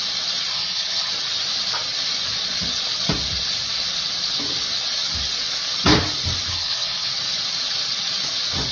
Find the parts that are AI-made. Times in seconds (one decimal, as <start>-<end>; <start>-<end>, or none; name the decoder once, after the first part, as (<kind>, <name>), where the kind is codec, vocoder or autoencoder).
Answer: 0.5-1.1 (codec, HILCodec); 6.5-7.1